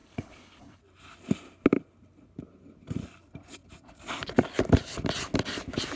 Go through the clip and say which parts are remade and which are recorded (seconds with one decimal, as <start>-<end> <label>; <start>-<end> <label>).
0.0-0.8 remade; 0.8-6.0 recorded